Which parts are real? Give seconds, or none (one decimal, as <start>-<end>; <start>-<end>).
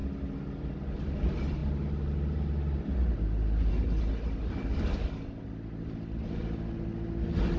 0.0-7.6